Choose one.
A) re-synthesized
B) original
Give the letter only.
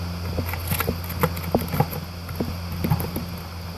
B